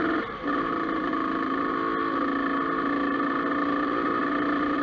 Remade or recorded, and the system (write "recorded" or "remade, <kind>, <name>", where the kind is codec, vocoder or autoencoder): recorded